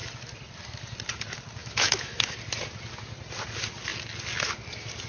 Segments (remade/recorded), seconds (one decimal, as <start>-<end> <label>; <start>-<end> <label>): 0.0-1.6 recorded; 1.6-2.3 remade; 2.3-5.1 recorded